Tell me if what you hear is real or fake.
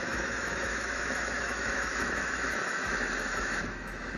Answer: fake